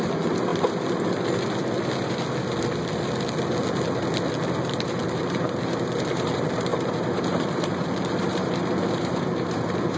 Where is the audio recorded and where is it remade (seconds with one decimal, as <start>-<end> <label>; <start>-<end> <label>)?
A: 0.0-0.5 remade; 0.5-4.5 recorded; 4.5-10.0 remade